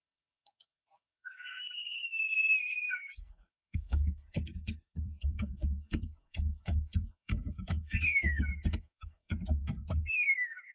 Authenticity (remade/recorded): remade